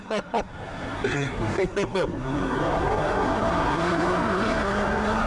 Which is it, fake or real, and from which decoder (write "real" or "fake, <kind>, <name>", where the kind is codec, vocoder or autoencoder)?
fake, codec, SNAC